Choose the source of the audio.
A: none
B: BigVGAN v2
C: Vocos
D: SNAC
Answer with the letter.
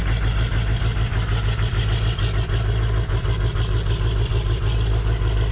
A